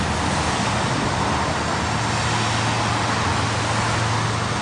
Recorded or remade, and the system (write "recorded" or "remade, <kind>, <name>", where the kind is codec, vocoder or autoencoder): recorded